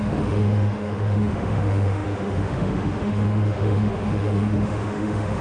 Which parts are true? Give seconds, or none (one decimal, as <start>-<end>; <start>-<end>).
none